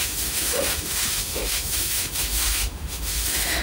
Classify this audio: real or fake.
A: fake